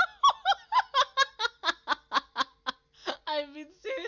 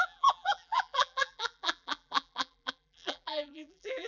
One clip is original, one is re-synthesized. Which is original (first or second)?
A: first